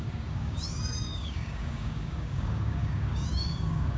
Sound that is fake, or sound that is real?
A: fake